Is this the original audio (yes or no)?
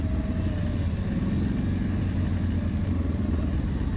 yes